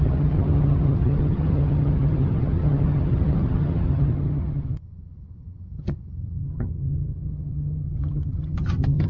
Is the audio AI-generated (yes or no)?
yes